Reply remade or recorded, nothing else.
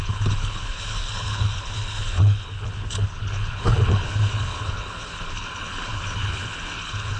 remade